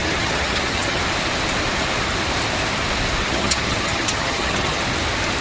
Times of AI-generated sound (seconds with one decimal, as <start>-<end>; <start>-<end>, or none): 0.0-1.0; 3.2-4.8